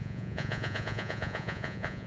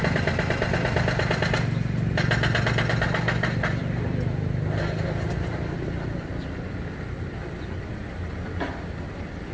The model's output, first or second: first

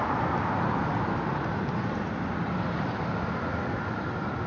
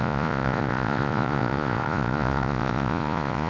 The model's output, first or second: second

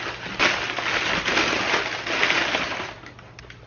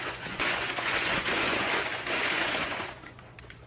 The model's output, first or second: second